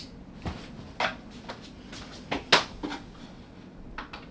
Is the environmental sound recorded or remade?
recorded